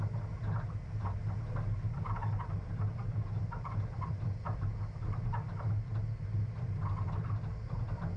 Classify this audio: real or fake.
real